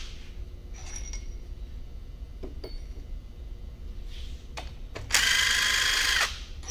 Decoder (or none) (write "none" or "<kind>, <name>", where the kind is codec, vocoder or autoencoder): none